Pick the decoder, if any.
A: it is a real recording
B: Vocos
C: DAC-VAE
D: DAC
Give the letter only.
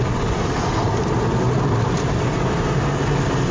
A